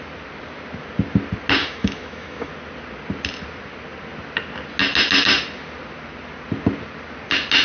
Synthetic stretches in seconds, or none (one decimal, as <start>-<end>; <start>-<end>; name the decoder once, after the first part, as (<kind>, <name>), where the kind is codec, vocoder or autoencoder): 1.6-2.5 (autoencoder, DAC-VAE)

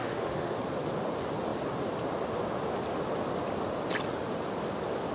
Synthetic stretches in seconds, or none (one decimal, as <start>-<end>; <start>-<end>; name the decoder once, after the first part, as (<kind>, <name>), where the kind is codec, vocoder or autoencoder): 0.0-0.6 (autoencoder, DAC-VAE)

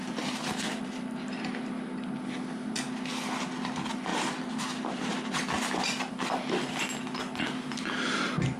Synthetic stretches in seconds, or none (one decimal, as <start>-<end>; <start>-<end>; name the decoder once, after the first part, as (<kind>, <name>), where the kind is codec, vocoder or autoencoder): none

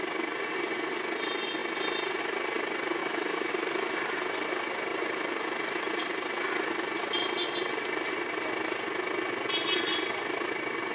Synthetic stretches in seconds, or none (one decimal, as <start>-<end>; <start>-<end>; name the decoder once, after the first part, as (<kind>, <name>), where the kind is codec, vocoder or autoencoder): 3.0-3.5 (autoencoder, DAC-VAE)

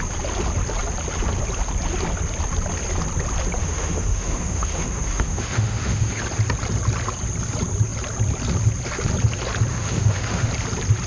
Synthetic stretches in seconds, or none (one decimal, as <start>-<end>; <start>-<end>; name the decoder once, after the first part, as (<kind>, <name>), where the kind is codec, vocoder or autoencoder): 3.6-6.2 (autoencoder, DAC-VAE); 9.7-10.5

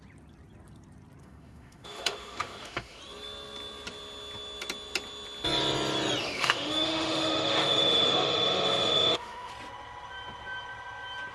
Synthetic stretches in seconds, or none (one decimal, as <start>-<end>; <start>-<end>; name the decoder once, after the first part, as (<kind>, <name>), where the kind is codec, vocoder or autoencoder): 1.2-3.0 (autoencoder, DAC-VAE); 6.2-9.5

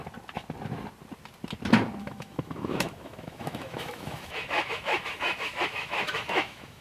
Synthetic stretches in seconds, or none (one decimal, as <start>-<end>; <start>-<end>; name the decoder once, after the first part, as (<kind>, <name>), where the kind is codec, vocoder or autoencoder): 2.0-6.8 (autoencoder, DAC-VAE)

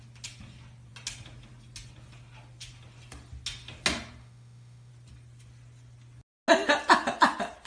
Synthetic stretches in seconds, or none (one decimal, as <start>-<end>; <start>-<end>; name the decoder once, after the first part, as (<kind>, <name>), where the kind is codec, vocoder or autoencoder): 4.2-4.9 (autoencoder, DAC-VAE)